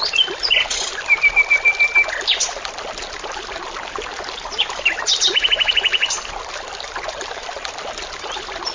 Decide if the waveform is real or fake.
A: real